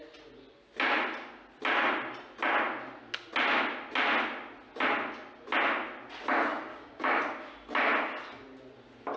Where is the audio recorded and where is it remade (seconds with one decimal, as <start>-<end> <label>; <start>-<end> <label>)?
0.0-6.7 recorded; 6.7-7.2 remade; 7.2-9.2 recorded